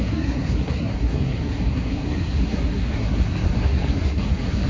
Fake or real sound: fake